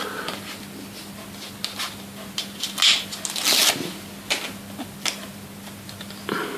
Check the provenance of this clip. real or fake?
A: real